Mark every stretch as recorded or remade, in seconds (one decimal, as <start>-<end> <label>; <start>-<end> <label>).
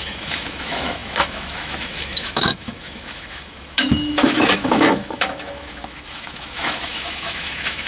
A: 0.0-7.9 remade